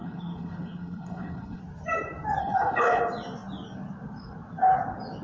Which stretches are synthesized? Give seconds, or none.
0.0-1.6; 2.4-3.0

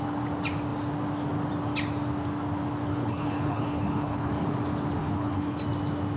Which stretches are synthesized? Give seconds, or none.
2.9-4.3; 5.0-5.6